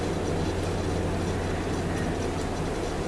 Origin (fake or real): real